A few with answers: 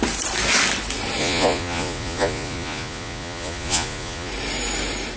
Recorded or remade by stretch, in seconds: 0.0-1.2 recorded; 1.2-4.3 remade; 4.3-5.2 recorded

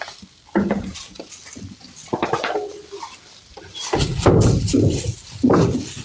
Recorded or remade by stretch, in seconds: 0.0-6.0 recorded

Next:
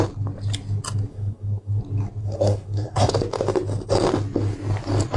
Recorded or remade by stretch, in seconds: 0.0-1.1 recorded; 1.1-1.8 remade; 1.8-2.2 recorded; 2.2-3.1 remade; 3.1-5.2 recorded

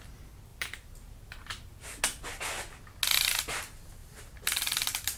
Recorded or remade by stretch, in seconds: 0.0-0.5 recorded; 0.5-2.0 remade; 2.0-4.0 recorded; 4.0-5.2 remade

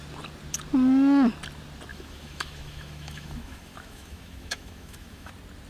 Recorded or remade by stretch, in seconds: 0.0-1.9 recorded; 1.9-5.3 remade; 5.3-5.7 recorded

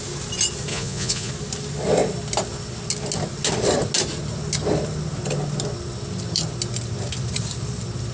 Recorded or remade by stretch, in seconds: 0.0-0.7 recorded; 0.7-1.3 remade; 1.3-8.1 recorded

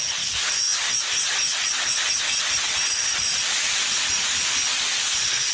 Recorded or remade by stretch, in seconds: 0.0-5.5 recorded